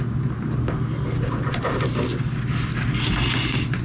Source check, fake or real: real